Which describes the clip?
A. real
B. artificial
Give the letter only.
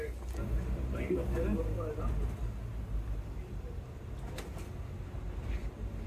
A